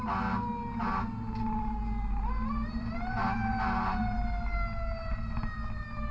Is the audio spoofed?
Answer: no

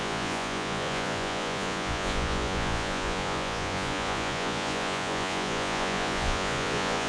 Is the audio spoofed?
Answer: yes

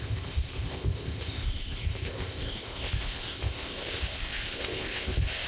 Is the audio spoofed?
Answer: yes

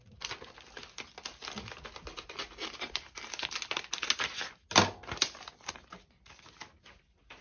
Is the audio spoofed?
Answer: no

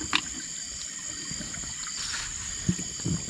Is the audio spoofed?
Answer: no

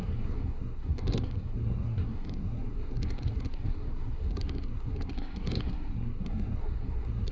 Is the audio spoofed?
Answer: yes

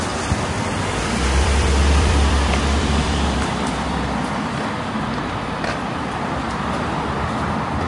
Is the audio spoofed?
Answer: yes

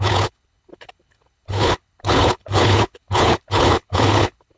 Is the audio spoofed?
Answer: yes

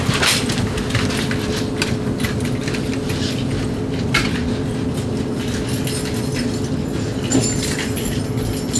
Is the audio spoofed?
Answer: no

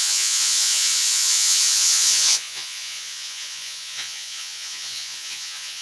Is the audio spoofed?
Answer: yes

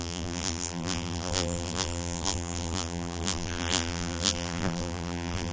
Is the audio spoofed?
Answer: yes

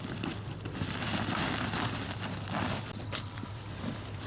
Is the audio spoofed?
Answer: no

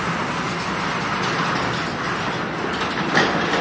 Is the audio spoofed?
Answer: no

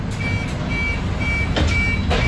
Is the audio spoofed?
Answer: no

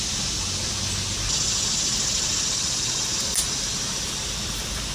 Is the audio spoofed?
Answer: no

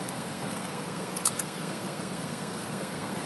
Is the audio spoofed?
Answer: yes